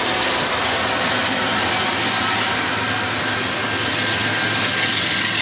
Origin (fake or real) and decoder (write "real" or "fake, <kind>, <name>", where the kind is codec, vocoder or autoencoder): real